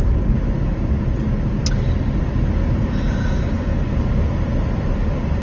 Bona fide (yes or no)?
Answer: yes